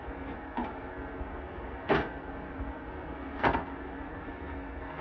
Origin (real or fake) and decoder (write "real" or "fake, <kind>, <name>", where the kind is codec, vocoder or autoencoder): fake, codec, SNAC